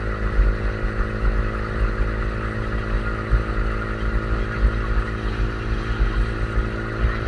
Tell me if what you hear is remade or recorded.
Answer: recorded